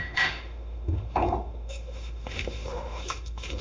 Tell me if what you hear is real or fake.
fake